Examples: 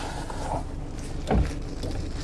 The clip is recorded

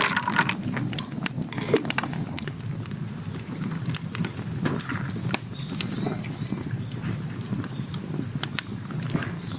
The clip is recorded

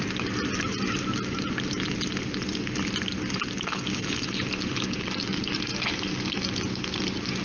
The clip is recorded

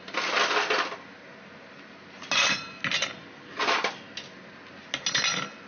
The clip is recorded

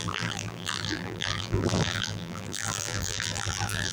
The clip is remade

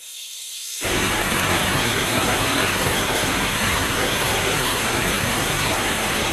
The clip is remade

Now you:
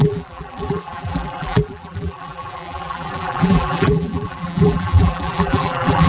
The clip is remade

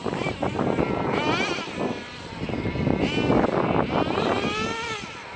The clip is recorded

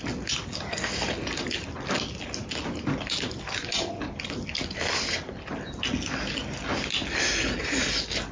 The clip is recorded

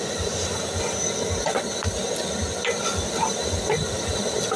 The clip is recorded